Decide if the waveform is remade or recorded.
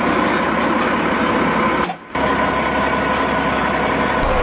recorded